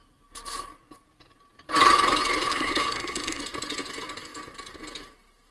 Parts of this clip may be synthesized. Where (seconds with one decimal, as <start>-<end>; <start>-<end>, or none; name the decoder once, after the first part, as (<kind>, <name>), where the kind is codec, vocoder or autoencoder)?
2.5-3.4 (codec, SNAC)